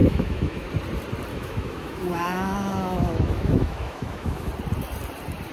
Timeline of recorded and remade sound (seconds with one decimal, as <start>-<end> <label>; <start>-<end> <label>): 0.0-0.7 remade; 0.7-1.3 recorded; 1.3-4.5 remade; 4.5-5.5 recorded